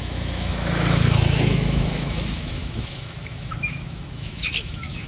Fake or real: fake